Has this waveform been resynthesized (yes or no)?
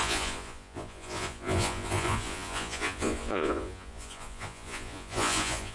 yes